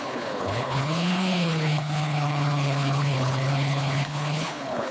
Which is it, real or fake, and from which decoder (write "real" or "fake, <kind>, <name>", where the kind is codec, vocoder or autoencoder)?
fake, codec, HILCodec